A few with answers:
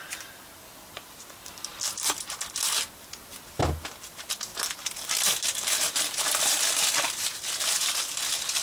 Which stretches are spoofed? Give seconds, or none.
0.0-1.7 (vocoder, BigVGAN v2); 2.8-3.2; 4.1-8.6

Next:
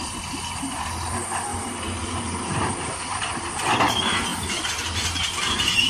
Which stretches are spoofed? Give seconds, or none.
1.5-3.3 (vocoder, BigVGAN v2); 4.3-5.9

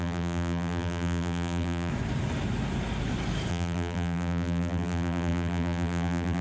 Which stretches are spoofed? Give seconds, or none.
0.0-1.9 (vocoder, BigVGAN v2); 3.5-6.4

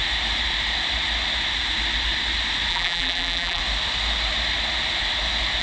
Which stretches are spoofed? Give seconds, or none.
2.7-3.6 (vocoder, BigVGAN v2)

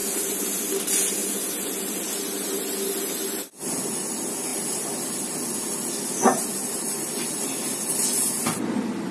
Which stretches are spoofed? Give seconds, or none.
6.6-7.9 (vocoder, BigVGAN v2)

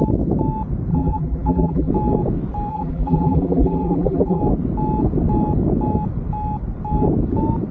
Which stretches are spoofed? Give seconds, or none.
0.9-1.9 (vocoder, BigVGAN v2); 2.7-4.4

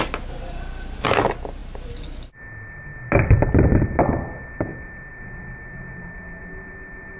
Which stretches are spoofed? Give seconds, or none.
none

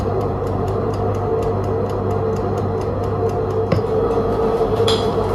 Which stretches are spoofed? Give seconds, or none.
0.0-1.3 (vocoder, BigVGAN v2); 2.6-3.0; 3.8-5.3